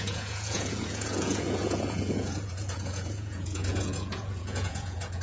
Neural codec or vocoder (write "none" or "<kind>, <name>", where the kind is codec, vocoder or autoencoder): vocoder, Vocos